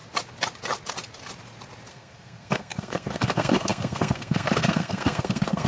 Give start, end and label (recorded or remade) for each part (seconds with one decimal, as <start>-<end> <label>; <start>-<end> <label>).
0.0-1.9 recorded; 1.9-5.7 remade